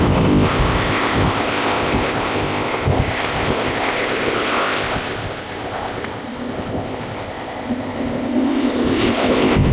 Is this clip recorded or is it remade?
remade